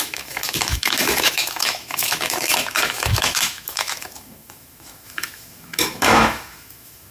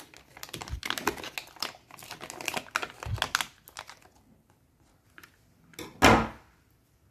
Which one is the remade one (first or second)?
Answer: first